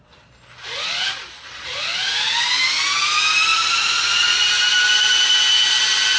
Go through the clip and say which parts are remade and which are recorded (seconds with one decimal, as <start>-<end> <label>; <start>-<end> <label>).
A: 0.0-3.5 recorded; 3.5-4.4 remade; 4.4-6.2 recorded